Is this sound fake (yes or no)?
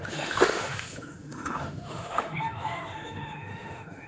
yes